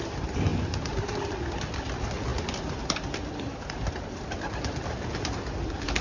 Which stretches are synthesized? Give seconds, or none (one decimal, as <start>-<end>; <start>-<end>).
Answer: 0.5-1.4